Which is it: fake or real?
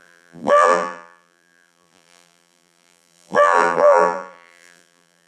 fake